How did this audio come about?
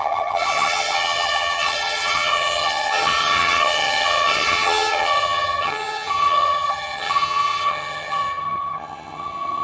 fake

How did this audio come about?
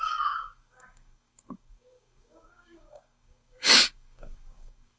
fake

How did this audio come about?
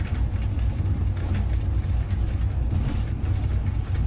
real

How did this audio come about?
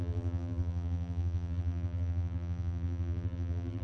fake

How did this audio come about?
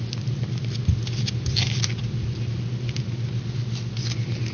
real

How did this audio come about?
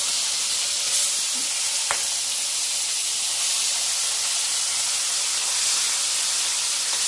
real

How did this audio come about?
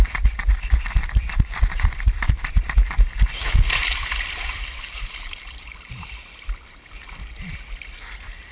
fake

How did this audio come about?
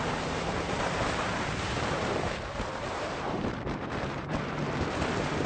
fake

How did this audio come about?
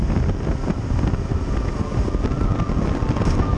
real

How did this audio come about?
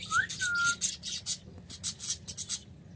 real